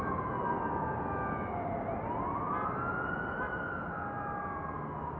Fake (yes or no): no